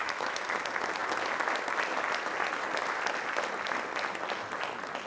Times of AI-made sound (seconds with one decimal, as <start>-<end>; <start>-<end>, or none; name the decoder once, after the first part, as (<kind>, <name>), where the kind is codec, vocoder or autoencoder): 0.0-0.6 (autoencoder, DAC-VAE)